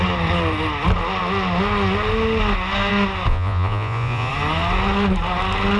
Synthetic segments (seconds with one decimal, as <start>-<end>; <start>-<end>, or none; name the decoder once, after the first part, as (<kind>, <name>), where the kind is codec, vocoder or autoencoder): 3.3-4.3 (vocoder, Vocos)